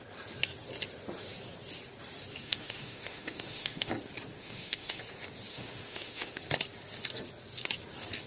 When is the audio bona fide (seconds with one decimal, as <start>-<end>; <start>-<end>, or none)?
0.0-2.4; 3.9-4.3; 5.0-5.5; 6.4-8.3